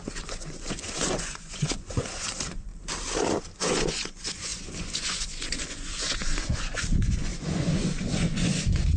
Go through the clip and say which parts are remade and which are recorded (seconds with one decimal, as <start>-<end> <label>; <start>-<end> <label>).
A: 0.0-2.7 remade; 2.7-3.6 recorded; 3.6-9.0 remade